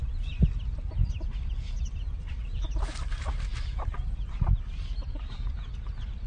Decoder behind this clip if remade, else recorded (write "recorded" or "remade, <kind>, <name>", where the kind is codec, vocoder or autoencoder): recorded